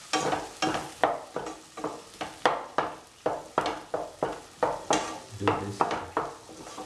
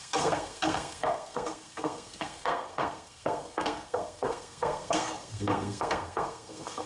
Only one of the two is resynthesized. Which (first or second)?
second